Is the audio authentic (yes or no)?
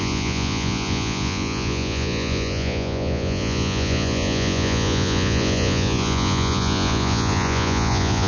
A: no